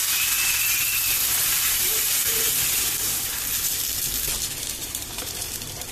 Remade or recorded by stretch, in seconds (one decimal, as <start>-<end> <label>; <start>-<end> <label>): 0.0-1.2 recorded; 1.2-3.2 remade; 3.2-4.8 recorded; 4.8-5.5 remade; 5.5-5.9 recorded